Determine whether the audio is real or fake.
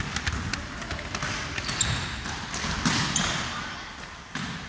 real